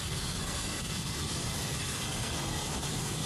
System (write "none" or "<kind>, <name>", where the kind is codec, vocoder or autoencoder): codec, SNAC